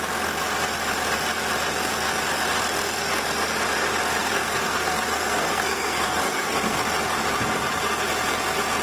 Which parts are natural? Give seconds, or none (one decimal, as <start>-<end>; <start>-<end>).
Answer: 0.0-4.2; 6.8-8.8